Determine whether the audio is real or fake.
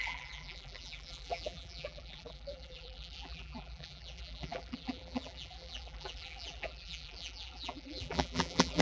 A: fake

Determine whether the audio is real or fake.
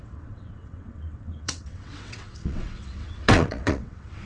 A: fake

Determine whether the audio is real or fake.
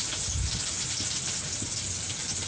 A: real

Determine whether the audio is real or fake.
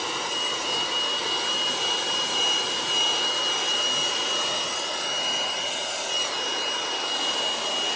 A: real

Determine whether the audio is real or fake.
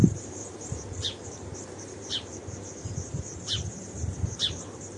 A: fake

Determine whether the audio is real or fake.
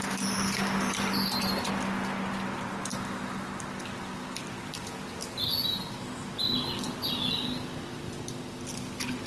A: real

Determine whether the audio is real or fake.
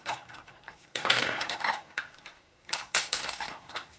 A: fake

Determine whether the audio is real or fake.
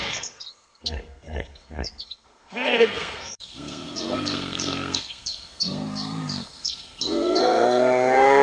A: fake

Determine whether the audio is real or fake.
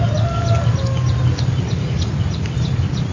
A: real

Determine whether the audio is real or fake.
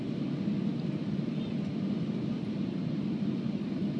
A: real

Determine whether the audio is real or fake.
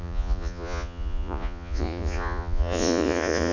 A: fake